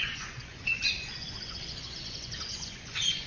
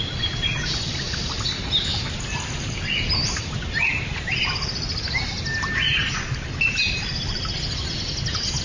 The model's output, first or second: first